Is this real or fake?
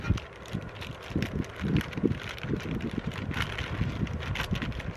real